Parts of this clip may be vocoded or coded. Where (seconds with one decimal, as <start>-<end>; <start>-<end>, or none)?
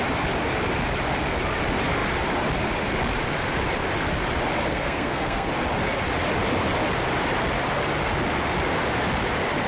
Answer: 4.7-5.5